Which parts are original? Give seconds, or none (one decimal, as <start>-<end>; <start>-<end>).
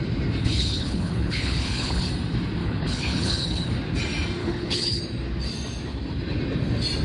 0.0-0.4; 2.1-2.6; 3.7-4.4; 5.0-7.0